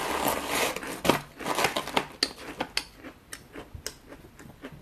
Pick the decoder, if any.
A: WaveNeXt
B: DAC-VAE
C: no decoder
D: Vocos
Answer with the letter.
C